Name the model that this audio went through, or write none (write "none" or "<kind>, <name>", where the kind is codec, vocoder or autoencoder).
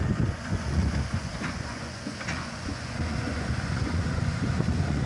vocoder, Vocos